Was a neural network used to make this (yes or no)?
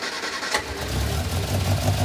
no